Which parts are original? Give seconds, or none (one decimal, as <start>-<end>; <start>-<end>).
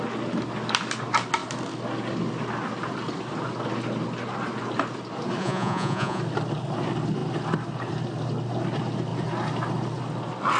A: 0.0-5.4; 6.2-10.6